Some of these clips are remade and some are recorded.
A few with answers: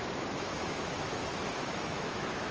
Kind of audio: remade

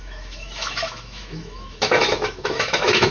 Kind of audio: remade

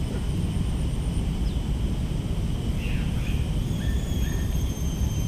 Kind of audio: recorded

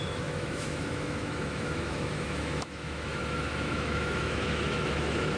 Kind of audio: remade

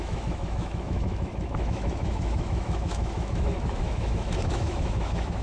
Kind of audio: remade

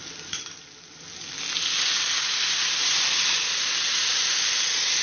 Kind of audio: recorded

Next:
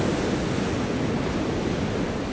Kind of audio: recorded